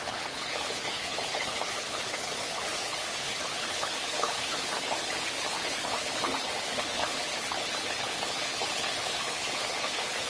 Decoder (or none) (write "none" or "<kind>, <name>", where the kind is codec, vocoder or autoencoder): codec, HILCodec